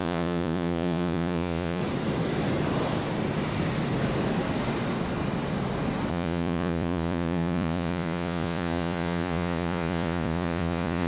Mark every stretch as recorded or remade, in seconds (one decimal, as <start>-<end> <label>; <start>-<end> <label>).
0.0-1.8 remade; 1.8-6.1 recorded; 6.1-11.1 remade